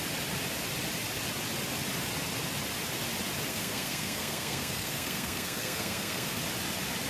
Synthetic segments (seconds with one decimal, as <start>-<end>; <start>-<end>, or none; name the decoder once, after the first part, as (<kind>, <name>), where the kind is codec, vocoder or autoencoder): 3.5-6.4 (codec, SNAC)